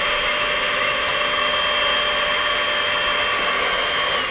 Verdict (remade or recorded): recorded